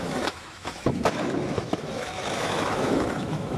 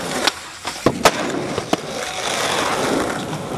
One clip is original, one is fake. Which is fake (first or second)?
first